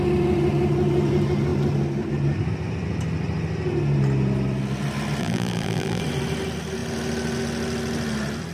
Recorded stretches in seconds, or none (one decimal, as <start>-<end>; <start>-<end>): 0.0-5.2; 6.0-8.5

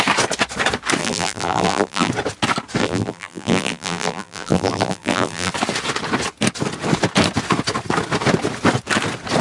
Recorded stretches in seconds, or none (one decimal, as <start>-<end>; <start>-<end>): 0.0-1.0; 2.1-2.8; 5.5-9.4

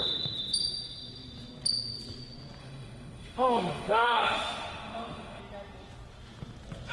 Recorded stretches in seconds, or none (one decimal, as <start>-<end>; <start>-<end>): 0.0-2.6; 5.4-6.9

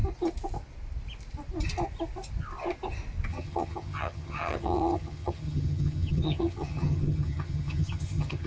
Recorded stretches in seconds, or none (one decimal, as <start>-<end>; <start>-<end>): 0.0-3.3

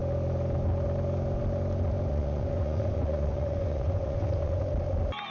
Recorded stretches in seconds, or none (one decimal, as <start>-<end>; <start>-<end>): 0.0-2.1; 4.6-5.3

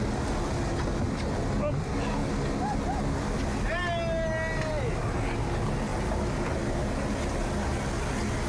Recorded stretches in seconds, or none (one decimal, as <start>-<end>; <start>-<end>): 0.0-5.9; 7.0-8.5